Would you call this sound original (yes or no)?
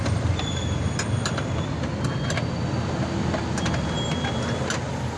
yes